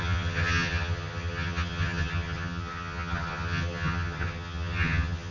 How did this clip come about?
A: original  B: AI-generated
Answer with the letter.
B